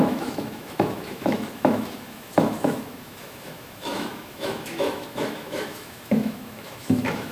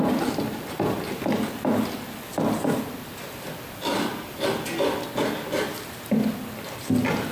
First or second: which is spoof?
first